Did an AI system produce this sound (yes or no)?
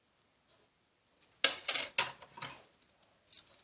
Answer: no